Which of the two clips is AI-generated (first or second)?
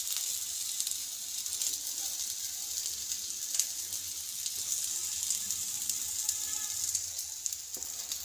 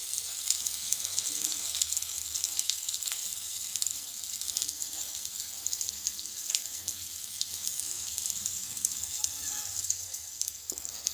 second